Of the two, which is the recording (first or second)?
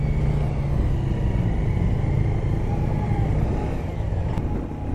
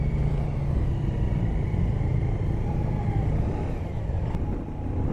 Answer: first